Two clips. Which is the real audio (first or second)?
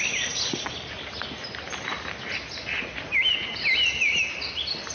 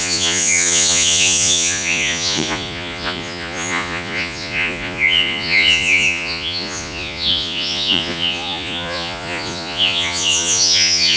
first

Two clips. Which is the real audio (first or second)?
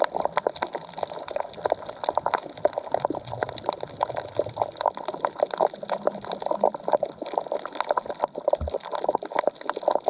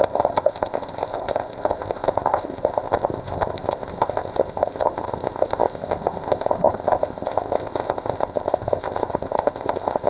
first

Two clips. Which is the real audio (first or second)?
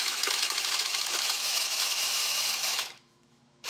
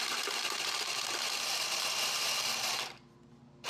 second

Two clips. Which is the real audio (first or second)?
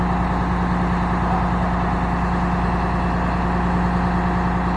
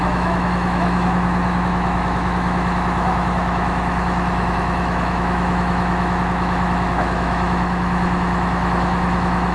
first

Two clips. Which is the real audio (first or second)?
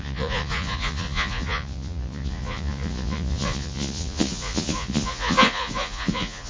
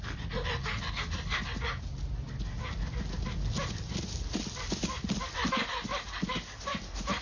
second